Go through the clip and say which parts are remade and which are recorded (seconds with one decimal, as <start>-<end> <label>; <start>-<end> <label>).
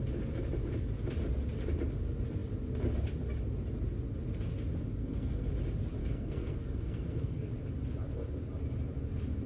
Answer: 0.0-5.0 recorded; 5.0-5.5 remade; 5.5-6.0 recorded; 6.0-7.5 remade; 7.5-9.5 recorded